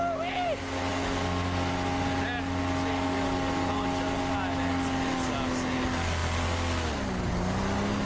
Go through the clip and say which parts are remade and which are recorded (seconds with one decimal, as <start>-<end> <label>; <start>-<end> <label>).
0.0-8.1 recorded